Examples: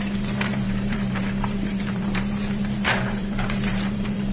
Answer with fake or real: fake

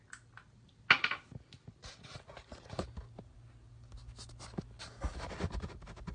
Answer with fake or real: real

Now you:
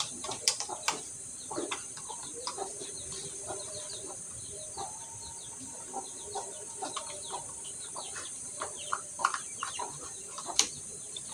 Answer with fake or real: fake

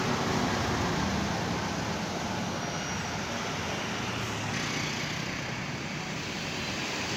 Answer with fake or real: real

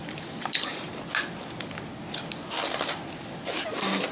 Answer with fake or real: real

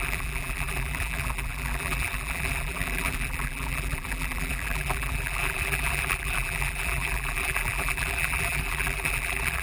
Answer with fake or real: fake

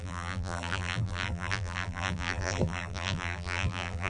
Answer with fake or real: fake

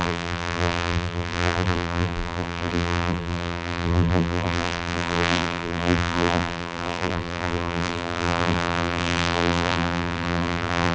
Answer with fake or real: fake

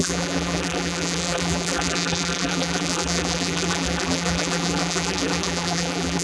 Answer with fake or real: fake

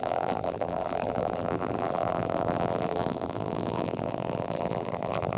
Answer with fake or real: fake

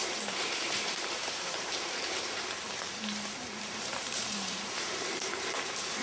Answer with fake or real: fake